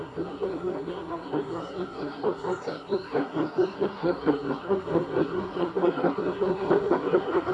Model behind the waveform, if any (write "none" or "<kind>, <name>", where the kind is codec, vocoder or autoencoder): codec, SNAC